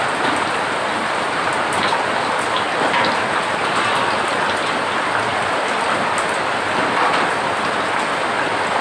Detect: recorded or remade recorded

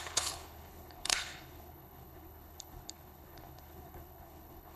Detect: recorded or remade remade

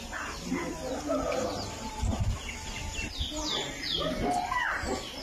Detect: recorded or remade recorded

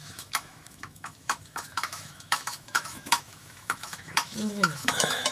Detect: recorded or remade remade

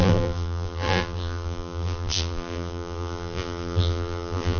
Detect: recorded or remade remade